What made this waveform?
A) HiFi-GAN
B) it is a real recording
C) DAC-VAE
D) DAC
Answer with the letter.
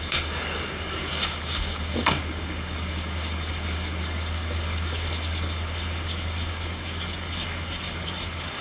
D